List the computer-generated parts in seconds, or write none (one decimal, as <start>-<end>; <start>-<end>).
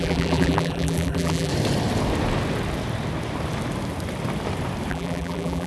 0.0-1.5; 4.9-5.7